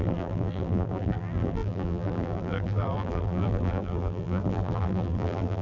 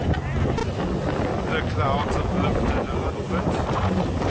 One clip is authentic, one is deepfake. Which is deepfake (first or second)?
first